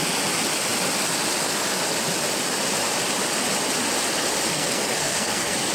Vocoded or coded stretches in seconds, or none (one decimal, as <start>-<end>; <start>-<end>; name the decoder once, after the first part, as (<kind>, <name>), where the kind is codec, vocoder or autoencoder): 4.5-5.7 (codec, SNAC)